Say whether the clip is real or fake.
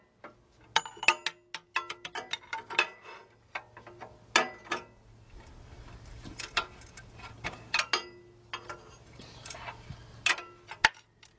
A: real